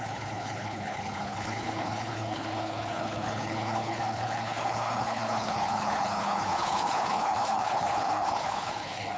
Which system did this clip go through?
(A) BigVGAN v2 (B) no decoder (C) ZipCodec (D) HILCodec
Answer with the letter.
D